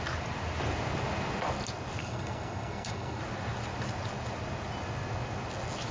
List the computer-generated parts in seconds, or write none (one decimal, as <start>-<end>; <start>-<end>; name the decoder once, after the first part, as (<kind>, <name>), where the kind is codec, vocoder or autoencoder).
2.0-3.2 (codec, SNAC)